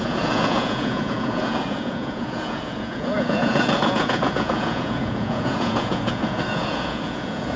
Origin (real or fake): fake